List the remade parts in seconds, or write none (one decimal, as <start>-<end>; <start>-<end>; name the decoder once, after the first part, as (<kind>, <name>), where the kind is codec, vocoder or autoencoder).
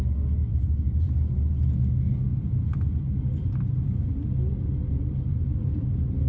0.4-1.1 (vocoder, BigVGAN v2); 2.3-4.1; 5.3-6.3